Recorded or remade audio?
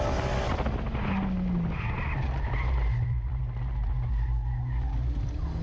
recorded